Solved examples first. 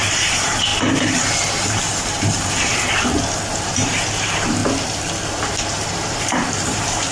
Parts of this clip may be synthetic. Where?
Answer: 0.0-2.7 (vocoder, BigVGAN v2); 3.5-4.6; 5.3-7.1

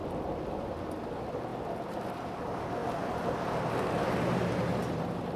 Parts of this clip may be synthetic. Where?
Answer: 0.0-0.9 (vocoder, BigVGAN v2); 1.5-2.4

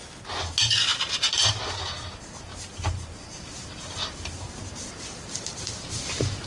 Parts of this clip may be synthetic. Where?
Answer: 0.9-1.6 (vocoder, BigVGAN v2); 2.5-6.5

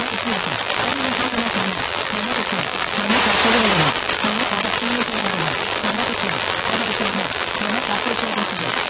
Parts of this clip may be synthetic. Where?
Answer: 0.0-3.1 (vocoder, BigVGAN v2); 3.9-8.9

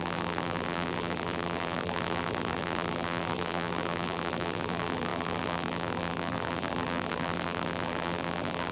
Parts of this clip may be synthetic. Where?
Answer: 0.0-8.7 (vocoder, BigVGAN v2)

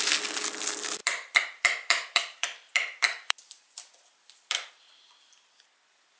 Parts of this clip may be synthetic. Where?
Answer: 1.0-4.7 (vocoder, BigVGAN v2)

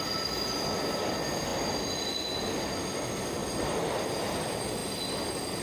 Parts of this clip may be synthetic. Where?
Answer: 3.4-3.9 (vocoder, BigVGAN v2)

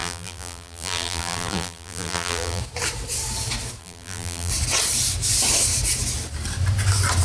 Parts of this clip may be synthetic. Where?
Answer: 0.0-2.6 (vocoder, BigVGAN v2); 3.8-4.5